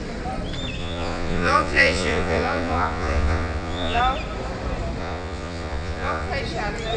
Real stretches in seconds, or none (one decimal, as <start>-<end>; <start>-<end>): 0.0-0.8; 4.0-5.0; 6.3-7.0

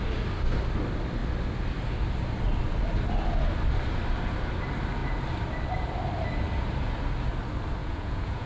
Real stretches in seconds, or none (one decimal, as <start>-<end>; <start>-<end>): 0.0-7.8

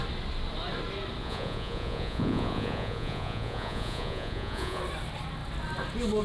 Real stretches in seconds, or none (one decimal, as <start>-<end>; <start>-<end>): 0.0-1.2; 4.8-6.2